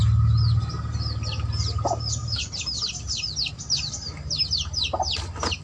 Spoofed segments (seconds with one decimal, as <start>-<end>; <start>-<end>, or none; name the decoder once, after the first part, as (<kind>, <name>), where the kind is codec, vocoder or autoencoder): none